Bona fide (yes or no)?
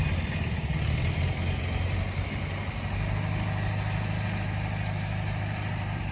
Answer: yes